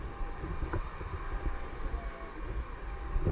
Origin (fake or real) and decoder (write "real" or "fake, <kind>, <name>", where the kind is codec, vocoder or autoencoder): real